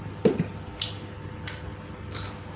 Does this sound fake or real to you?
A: real